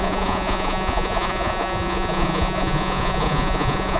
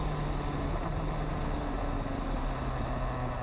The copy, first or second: first